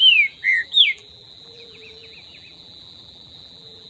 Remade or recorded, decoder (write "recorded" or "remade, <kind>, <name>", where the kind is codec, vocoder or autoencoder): remade, vocoder, BigVGAN v2